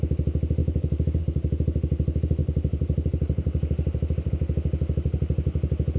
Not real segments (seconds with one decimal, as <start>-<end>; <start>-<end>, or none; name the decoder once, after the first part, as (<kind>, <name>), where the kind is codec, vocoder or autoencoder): 0.6-1.2 (vocoder, BigVGAN v2); 2.4-4.3